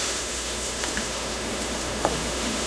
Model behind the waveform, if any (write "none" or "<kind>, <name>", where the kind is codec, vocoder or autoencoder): autoencoder, DAC-VAE